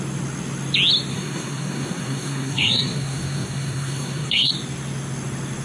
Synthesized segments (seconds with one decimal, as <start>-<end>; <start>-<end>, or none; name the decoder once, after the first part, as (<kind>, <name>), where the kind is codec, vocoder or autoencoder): 1.1-4.5 (codec, SNAC)